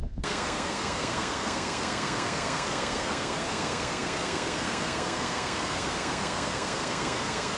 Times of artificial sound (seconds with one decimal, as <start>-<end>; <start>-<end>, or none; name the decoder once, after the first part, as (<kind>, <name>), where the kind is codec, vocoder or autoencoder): 0.0-7.6 (codec, SNAC)